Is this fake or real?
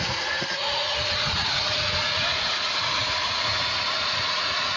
fake